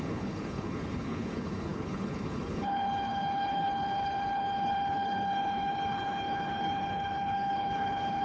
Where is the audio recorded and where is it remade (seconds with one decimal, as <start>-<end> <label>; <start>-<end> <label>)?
0.0-8.2 remade